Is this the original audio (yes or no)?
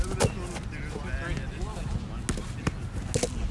yes